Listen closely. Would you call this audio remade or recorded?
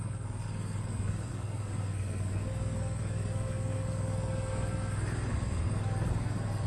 remade